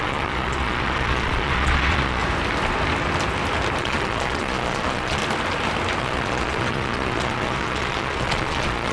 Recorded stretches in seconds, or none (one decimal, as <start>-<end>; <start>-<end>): 2.2-3.8; 5.2-6.0